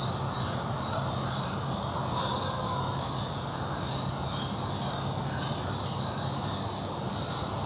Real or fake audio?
real